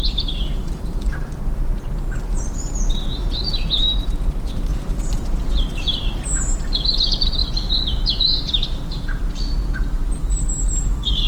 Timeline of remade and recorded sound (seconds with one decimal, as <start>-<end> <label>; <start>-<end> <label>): 0.0-1.1 remade; 1.1-4.0 recorded; 4.0-11.3 remade